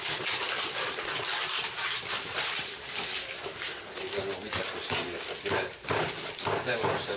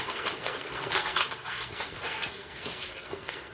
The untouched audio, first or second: first